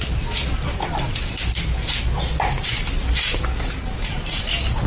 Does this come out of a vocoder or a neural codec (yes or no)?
no